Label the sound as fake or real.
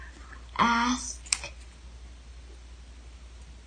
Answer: real